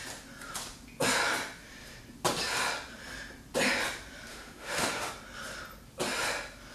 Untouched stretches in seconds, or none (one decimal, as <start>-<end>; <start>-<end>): 0.0-4.3; 5.1-6.7